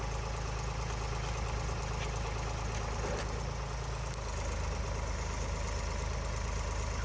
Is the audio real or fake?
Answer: real